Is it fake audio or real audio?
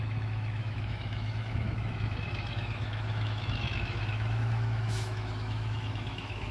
fake